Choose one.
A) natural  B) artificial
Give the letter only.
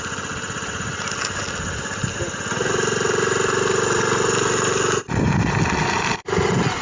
A